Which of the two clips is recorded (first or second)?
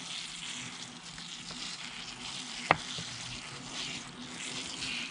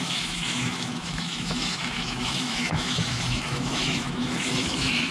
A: first